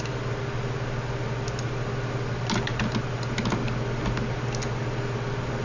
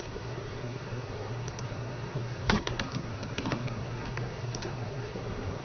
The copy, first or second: second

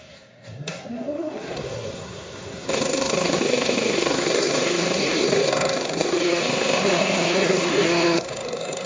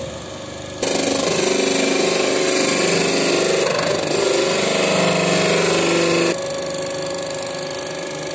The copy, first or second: first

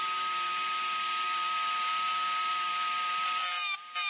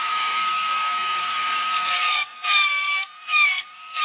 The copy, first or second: second